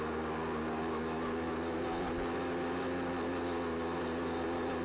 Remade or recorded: recorded